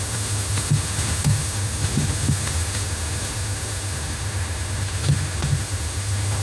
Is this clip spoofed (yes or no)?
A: yes